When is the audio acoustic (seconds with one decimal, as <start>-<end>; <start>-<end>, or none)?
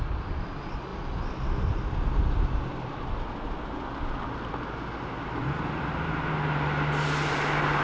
0.0-7.8